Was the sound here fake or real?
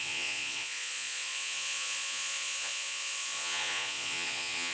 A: fake